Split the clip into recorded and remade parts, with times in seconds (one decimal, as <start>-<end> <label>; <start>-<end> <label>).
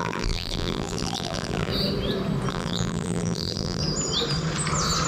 0.0-1.7 remade; 1.7-2.5 recorded; 2.5-3.8 remade; 3.8-5.1 recorded